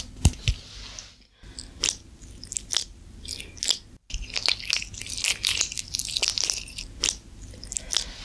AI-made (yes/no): no